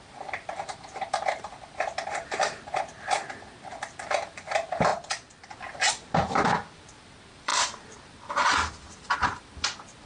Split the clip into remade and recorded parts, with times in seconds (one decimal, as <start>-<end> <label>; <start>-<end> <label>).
0.0-10.1 remade